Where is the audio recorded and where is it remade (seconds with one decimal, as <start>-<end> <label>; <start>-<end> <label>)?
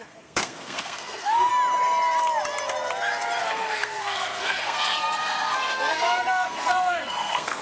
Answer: 0.0-1.5 remade; 1.5-3.4 recorded; 3.4-7.6 remade